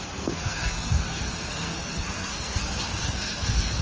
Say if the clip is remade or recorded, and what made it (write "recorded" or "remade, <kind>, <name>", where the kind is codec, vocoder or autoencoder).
remade, codec, SNAC